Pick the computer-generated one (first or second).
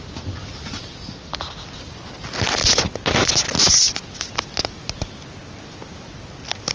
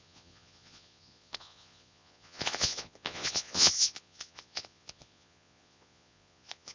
second